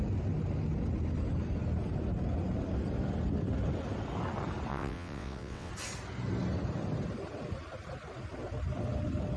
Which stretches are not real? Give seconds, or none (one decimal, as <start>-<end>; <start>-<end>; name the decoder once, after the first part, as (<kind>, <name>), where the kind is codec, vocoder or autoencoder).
4.7-5.7 (vocoder, WaveNeXt)